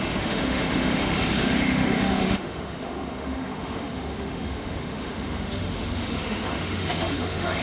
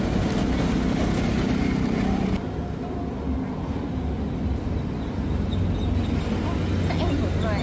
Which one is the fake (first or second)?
first